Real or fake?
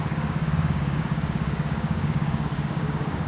fake